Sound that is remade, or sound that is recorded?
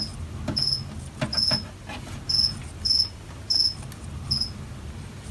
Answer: recorded